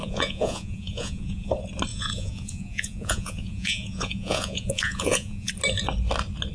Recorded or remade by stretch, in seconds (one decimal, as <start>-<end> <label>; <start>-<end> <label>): 0.0-1.5 remade; 1.5-1.9 recorded; 1.9-5.5 remade; 5.5-6.5 recorded